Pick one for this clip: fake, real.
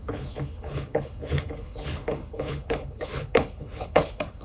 fake